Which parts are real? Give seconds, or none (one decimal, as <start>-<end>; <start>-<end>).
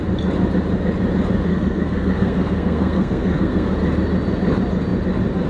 0.0-1.5; 3.7-5.5